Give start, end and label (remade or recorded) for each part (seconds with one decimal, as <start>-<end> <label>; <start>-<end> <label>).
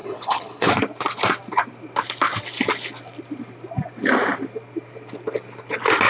0.0-0.7 remade; 0.7-6.1 recorded